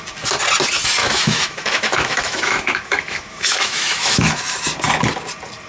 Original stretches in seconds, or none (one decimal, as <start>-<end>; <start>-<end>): 0.0-1.0; 4.4-5.7